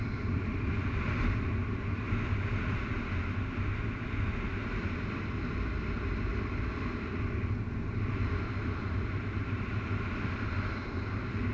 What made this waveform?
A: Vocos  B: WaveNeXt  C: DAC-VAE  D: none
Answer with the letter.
D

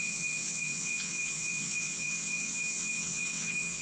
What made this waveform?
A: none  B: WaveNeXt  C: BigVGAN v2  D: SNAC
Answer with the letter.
B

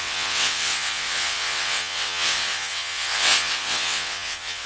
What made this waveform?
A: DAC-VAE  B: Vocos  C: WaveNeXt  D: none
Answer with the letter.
C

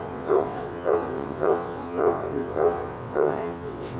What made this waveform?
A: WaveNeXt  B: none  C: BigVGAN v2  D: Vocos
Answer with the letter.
A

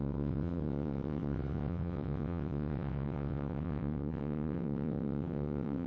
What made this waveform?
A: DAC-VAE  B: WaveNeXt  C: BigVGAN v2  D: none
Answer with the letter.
B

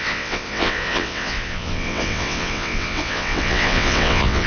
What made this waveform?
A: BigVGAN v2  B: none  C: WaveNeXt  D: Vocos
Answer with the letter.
C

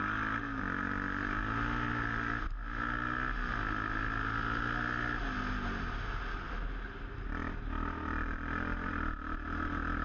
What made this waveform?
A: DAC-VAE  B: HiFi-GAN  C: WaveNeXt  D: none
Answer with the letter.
D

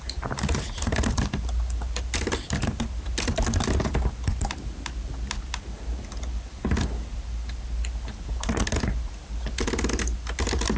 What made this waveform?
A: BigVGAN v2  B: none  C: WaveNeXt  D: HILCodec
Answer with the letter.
B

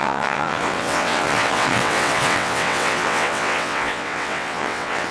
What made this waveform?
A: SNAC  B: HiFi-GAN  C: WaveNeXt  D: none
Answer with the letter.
C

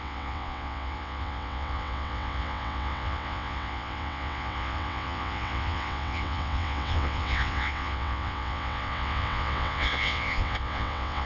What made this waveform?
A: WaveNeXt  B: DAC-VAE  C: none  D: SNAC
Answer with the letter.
A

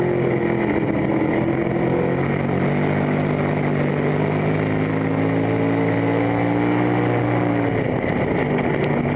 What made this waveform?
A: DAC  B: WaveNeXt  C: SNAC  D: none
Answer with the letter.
D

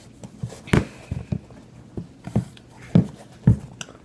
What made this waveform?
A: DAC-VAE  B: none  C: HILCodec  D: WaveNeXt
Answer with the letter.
B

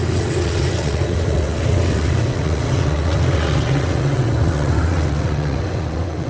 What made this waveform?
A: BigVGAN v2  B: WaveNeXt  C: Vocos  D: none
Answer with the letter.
B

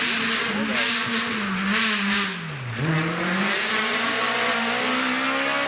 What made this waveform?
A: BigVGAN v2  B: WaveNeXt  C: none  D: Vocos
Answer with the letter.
C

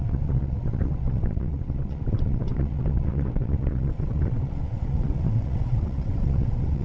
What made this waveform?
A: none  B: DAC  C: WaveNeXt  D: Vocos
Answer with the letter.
C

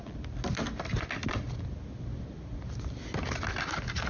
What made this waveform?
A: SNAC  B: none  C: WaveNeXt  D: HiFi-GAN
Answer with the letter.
B